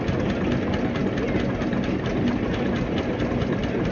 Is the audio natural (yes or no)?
yes